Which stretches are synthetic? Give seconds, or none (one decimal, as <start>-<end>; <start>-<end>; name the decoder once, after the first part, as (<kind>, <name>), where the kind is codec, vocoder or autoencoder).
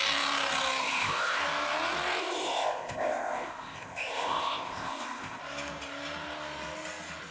0.8-1.4 (codec, ZipCodec); 2.2-5.4